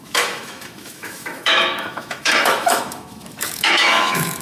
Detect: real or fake fake